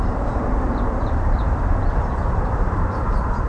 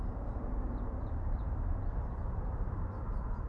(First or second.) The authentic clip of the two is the second